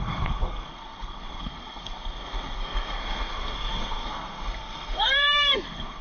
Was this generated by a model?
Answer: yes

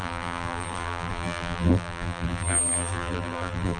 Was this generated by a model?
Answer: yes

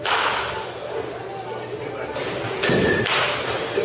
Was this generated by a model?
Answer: no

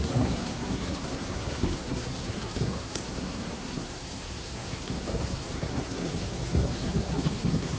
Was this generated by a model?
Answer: yes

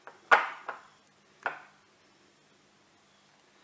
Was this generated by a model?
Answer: no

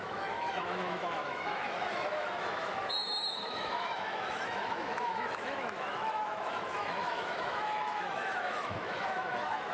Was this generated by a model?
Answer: yes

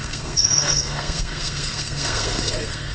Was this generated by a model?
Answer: yes